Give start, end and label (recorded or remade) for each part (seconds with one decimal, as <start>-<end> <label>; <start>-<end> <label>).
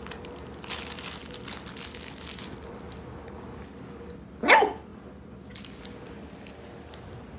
0.0-7.4 recorded